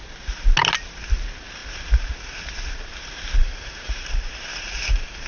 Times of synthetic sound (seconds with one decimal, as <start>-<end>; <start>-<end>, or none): 3.4-5.3